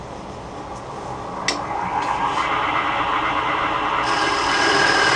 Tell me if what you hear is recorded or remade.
recorded